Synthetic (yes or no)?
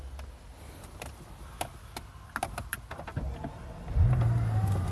no